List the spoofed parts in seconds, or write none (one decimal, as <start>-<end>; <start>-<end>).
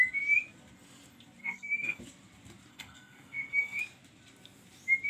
1.4-2.0; 2.7-3.8